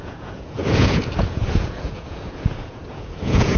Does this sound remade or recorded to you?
remade